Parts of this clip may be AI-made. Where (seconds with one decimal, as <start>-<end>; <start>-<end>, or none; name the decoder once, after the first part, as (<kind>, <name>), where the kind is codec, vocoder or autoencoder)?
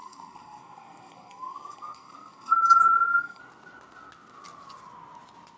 0.0-3.4 (codec, SNAC)